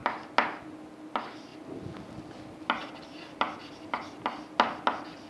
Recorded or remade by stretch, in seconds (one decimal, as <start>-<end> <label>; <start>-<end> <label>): 0.0-5.3 recorded